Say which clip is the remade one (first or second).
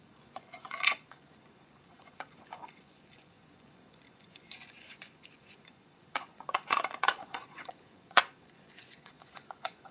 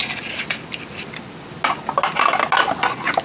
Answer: first